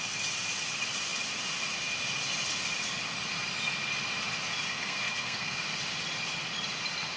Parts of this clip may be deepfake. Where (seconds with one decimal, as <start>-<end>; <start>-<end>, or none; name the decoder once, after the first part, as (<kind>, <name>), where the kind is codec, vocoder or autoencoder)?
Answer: 4.7-5.6 (codec, SNAC)